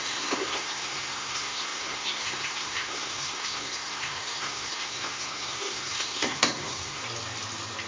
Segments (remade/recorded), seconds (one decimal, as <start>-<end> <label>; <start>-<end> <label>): 0.0-7.0 remade; 7.0-7.9 recorded